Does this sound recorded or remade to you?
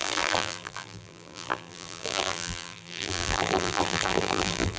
remade